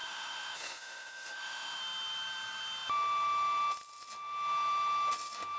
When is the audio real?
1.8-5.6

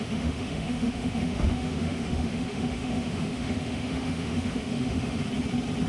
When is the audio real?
5.2-5.9

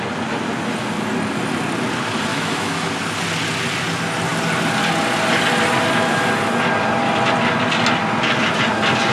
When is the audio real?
0.0-2.3; 2.9-9.1